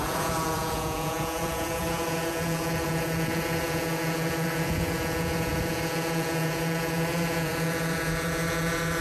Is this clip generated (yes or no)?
yes